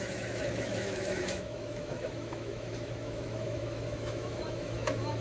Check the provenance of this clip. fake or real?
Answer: fake